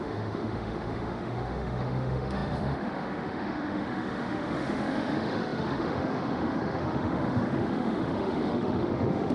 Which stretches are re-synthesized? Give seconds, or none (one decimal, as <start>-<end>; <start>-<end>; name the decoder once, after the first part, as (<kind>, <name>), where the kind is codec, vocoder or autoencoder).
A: 0.0-9.3 (autoencoder, DAC-VAE)